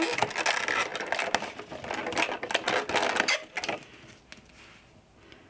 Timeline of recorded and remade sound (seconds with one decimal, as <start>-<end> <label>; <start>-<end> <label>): 0.0-5.5 recorded